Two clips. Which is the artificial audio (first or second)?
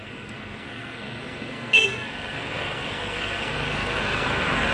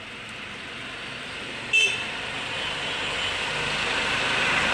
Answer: first